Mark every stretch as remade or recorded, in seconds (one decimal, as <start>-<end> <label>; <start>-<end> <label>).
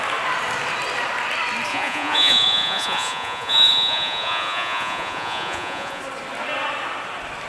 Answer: 0.0-1.7 recorded; 1.7-6.0 remade; 6.0-7.5 recorded